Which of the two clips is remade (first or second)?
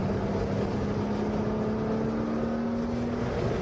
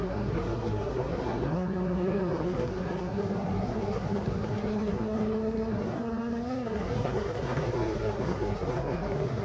second